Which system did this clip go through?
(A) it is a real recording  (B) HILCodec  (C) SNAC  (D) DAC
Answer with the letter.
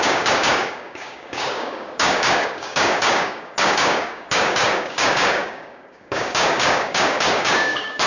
D